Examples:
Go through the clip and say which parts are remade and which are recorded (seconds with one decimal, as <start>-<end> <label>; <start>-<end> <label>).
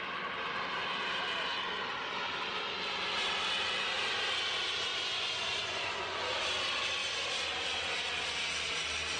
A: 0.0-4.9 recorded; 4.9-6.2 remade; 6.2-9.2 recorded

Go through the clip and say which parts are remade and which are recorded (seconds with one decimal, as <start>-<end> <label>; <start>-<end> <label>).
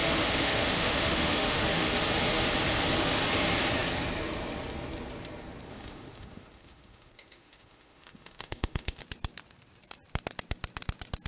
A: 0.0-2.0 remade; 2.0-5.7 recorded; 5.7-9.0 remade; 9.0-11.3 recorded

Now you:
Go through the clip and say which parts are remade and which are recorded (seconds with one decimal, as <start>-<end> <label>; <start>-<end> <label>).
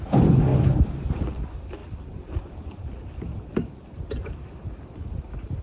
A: 0.0-5.6 recorded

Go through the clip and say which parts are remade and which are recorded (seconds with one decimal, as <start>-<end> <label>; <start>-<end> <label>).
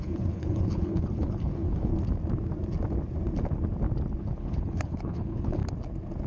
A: 0.0-1.9 remade; 1.9-4.2 recorded; 4.2-5.6 remade; 5.6-6.3 recorded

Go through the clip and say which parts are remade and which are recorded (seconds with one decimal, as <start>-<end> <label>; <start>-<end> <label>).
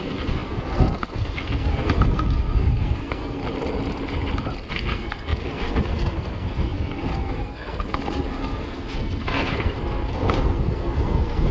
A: 0.0-3.4 remade; 3.4-4.7 recorded; 4.7-11.5 remade